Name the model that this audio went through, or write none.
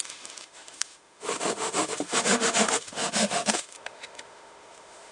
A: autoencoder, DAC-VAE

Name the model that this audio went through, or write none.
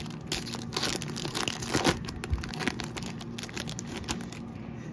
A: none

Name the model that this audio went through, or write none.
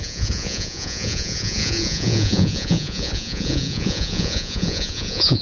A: vocoder, Vocos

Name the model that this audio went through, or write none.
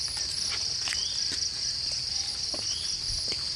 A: vocoder, BigVGAN v2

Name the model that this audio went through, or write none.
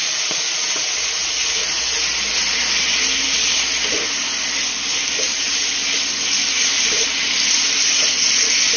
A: none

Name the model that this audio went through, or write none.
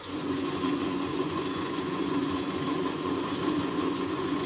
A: vocoder, Vocos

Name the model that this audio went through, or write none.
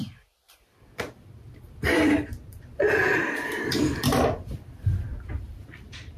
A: vocoder, BigVGAN v2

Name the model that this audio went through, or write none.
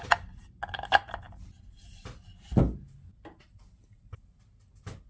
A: none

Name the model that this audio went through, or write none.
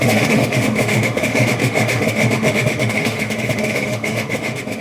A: autoencoder, DAC-VAE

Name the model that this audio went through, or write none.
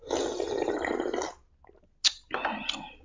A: none